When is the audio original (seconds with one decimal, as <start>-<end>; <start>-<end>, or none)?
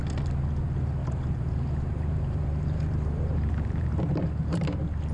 0.0-1.0; 4.1-5.1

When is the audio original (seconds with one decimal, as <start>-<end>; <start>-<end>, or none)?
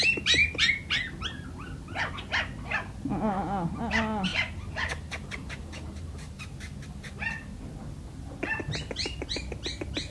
0.0-4.3; 6.4-10.1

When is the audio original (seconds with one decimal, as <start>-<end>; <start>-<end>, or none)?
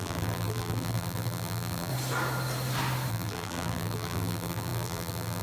1.9-3.1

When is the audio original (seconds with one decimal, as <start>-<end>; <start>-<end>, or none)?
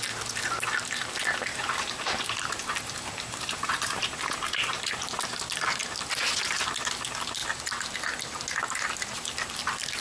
0.0-1.5; 5.4-10.0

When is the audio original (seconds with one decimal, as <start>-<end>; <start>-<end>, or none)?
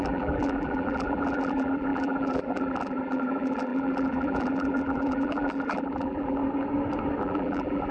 6.4-7.2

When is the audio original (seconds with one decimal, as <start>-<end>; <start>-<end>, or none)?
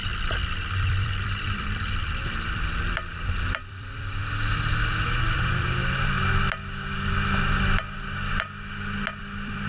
4.2-5.2; 5.8-9.2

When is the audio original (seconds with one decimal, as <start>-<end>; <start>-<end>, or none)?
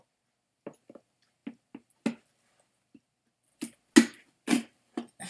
0.0-4.5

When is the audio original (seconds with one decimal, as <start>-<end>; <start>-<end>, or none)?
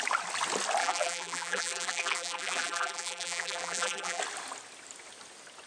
0.0-0.8; 4.2-5.7